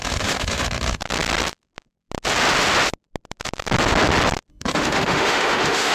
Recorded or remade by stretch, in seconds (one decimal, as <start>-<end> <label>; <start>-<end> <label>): 0.0-1.0 remade; 1.0-4.5 recorded; 4.5-5.9 remade